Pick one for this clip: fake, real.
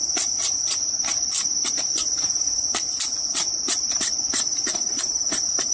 real